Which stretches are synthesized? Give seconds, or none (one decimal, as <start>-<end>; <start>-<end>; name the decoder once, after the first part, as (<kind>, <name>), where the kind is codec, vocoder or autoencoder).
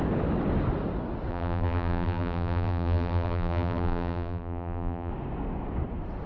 1.3-5.1 (vocoder, BigVGAN v2)